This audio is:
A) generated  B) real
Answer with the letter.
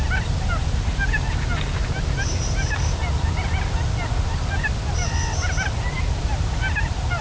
B